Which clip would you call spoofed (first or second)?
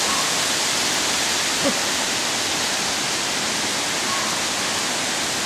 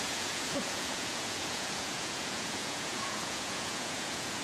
second